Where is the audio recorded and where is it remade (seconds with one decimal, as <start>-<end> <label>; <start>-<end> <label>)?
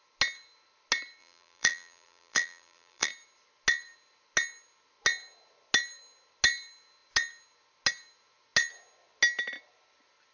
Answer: 0.0-1.2 recorded; 1.2-3.1 remade; 3.1-10.3 recorded